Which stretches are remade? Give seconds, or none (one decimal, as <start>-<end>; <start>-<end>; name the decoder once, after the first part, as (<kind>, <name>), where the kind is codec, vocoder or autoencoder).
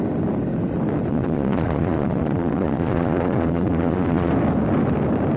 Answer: 1.1-4.3 (vocoder, Vocos)